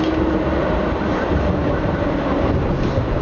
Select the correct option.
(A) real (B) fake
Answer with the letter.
A